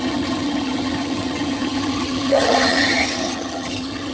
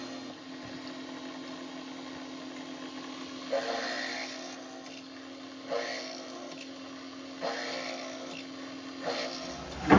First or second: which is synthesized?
first